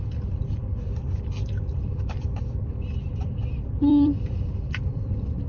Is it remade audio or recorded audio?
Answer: remade